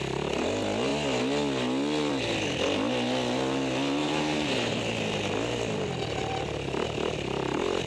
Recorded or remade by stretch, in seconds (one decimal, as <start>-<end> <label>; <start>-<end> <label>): 0.0-4.0 recorded; 4.0-4.7 remade; 4.7-7.9 recorded